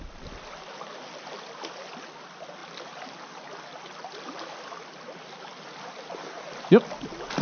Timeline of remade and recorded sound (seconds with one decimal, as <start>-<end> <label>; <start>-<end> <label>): 0.0-7.4 recorded